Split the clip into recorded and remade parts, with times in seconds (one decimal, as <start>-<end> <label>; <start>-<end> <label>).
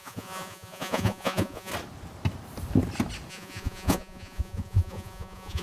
0.0-1.7 remade; 1.7-3.3 recorded; 3.3-5.6 remade